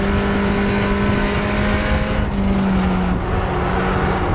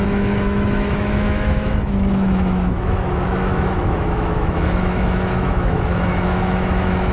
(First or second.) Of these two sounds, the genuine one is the first